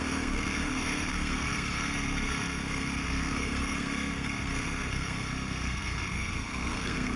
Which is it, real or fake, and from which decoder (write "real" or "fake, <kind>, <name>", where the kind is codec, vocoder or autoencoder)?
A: fake, codec, SNAC